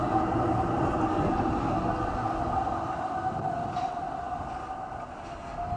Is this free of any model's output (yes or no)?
yes